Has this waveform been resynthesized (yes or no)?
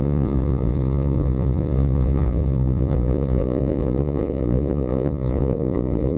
yes